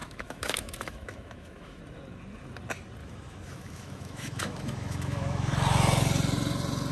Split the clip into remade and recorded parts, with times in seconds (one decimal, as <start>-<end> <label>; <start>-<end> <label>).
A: 0.0-1.8 remade; 1.8-3.0 recorded; 3.0-5.5 remade; 5.5-6.9 recorded